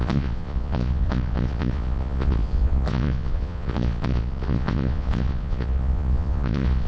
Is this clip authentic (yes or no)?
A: no